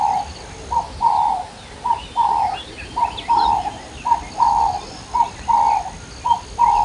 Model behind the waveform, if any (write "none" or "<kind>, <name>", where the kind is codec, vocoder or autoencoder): none